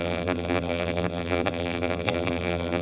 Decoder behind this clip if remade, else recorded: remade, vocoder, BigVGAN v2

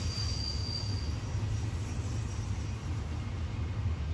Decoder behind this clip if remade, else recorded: recorded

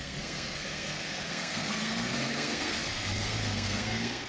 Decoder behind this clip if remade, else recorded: remade, codec, SNAC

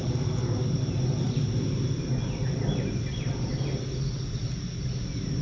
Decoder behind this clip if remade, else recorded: recorded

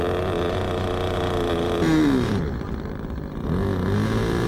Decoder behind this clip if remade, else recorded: recorded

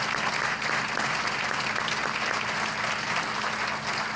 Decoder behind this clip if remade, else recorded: recorded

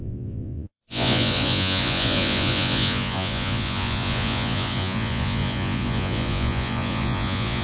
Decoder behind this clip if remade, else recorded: remade, vocoder, Vocos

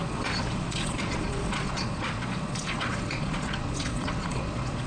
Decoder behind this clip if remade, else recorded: remade, vocoder, Vocos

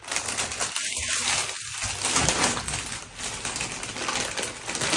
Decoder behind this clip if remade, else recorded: recorded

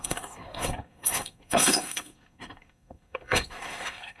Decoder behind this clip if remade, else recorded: remade, codec, SNAC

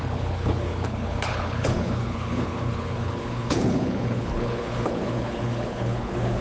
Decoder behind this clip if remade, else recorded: remade, codec, HILCodec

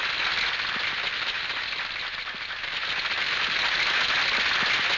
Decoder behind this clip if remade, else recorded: recorded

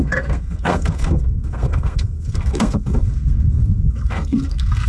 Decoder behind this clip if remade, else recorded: remade, codec, SNAC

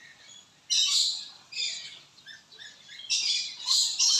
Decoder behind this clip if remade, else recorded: recorded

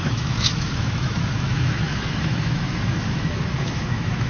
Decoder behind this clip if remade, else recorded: remade, autoencoder, DAC-VAE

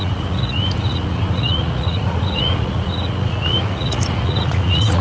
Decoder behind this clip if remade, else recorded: remade, vocoder, Vocos